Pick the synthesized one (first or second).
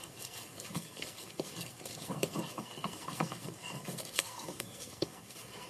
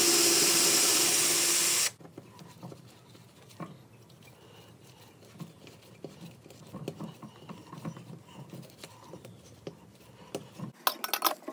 first